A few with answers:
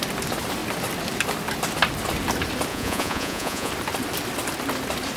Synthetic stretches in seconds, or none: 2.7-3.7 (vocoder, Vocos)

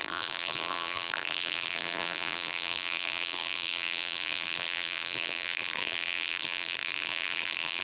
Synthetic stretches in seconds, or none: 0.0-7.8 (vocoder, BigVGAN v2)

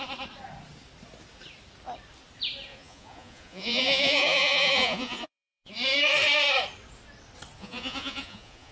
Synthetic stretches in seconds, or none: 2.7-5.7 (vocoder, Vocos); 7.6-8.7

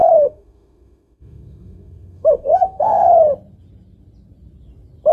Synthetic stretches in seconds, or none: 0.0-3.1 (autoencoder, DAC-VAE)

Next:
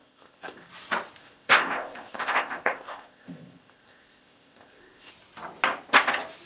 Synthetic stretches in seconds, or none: 0.0-0.7 (codec, ZipCodec); 1.2-5.1